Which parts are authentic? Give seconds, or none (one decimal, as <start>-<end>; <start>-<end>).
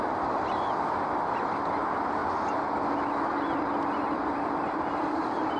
0.0-5.6